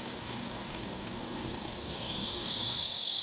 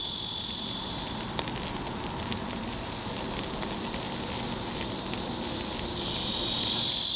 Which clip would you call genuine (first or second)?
second